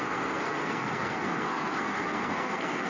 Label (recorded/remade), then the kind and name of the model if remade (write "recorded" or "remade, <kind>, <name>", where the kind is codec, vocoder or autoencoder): remade, codec, SNAC